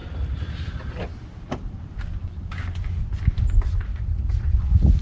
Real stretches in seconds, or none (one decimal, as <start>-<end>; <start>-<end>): 0.0-3.9